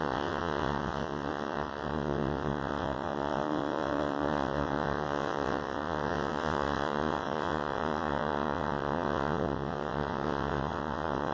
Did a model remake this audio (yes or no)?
yes